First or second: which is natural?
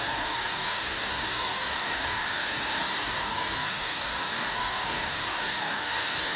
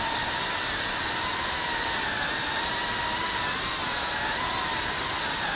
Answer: second